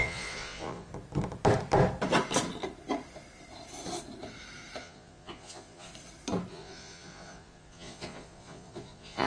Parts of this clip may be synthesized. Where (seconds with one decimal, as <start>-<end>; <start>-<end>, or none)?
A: 0.0-0.9; 4.8-5.9; 6.5-9.3